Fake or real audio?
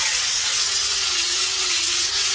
fake